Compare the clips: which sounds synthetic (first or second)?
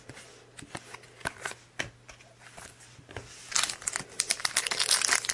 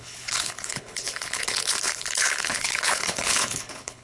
second